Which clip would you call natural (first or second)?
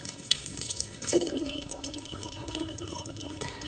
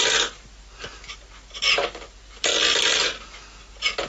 second